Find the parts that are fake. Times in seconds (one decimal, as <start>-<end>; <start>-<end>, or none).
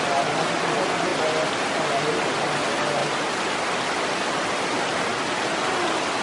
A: none